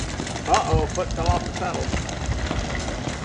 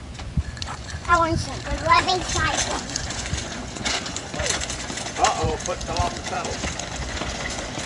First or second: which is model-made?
second